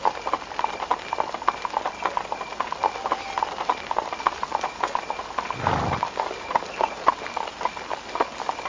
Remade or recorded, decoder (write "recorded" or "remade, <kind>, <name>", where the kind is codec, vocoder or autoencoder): recorded